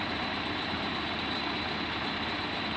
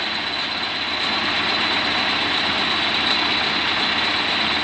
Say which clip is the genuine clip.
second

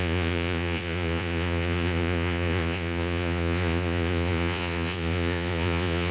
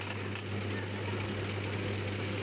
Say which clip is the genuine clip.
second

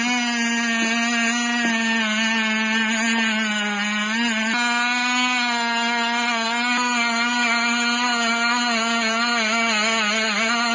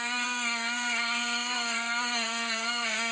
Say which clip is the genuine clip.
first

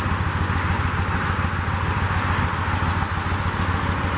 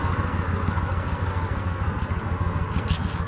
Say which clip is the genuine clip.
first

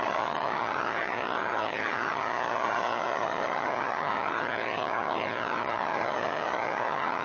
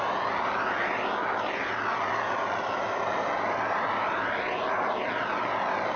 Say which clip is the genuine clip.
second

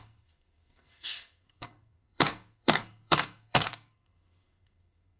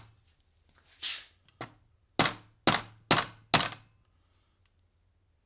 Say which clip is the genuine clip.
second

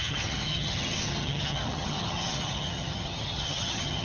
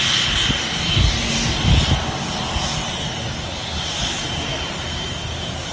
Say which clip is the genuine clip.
second